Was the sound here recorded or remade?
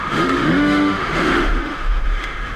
remade